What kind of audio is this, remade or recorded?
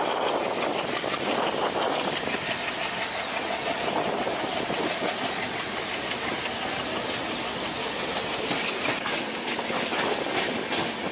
recorded